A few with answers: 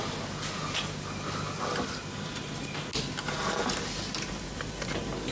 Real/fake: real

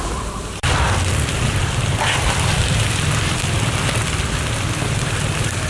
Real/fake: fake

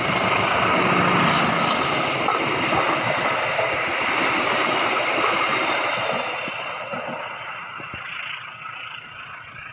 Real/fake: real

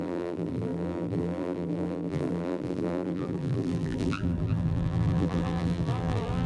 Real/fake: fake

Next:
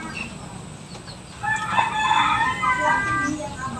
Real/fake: real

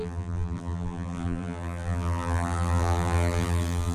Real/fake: fake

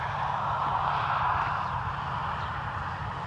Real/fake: real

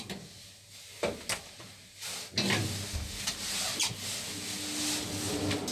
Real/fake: real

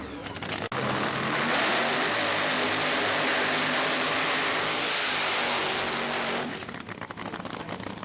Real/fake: real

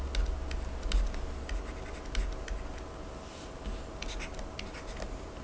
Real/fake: real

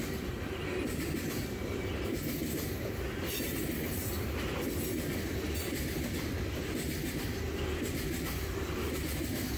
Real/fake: real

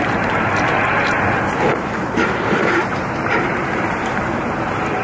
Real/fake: fake